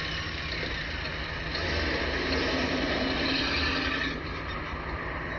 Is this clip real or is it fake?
real